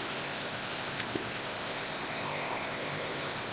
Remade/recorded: remade